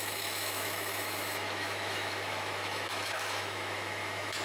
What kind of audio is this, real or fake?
fake